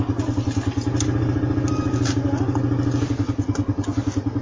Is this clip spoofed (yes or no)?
no